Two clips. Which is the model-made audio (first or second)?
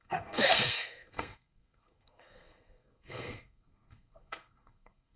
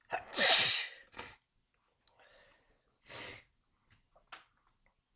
first